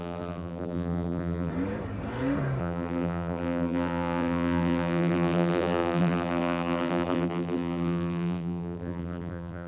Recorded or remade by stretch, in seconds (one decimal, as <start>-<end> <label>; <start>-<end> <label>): 0.0-1.5 remade; 1.5-2.6 recorded; 2.6-9.7 remade